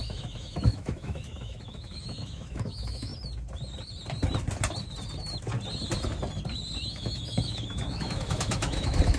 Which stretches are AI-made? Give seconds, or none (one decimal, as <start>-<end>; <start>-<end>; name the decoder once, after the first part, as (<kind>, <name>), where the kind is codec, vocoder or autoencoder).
0.0-3.1 (autoencoder, DAC-VAE); 6.9-9.2